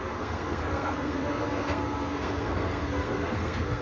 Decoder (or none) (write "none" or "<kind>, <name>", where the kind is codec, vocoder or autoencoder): codec, SNAC